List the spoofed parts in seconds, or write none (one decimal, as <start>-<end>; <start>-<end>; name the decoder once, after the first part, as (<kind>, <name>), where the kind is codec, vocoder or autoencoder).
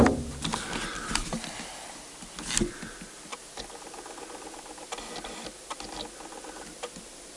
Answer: none